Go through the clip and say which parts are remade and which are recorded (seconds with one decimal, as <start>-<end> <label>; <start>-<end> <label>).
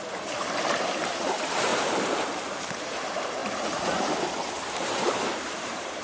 0.0-1.7 remade; 1.7-2.7 recorded; 2.7-3.4 remade; 3.4-4.6 recorded; 4.6-6.0 remade